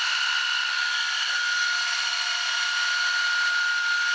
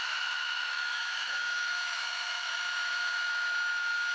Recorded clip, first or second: first